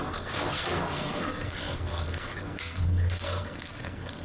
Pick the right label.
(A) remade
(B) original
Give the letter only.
A